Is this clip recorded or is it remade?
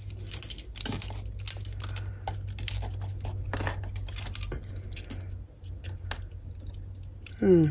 recorded